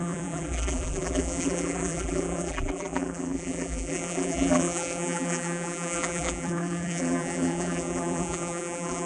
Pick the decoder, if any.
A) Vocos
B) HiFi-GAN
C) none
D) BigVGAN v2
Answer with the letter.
D